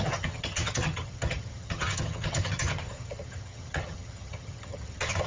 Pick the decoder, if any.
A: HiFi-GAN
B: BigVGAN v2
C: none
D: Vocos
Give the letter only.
A